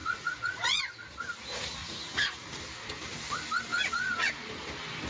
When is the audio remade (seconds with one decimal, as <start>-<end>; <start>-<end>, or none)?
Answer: 0.0-0.8; 1.8-2.6; 3.7-4.3